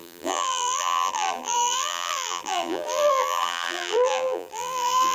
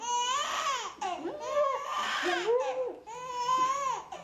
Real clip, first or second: second